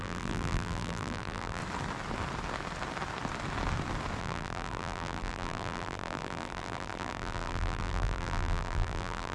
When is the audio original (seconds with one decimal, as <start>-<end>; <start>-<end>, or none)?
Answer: 1.6-4.2